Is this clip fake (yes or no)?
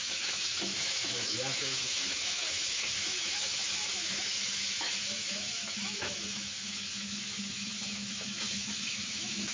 yes